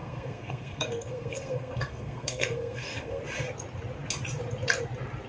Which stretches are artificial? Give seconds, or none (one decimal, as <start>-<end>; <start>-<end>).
0.0-3.2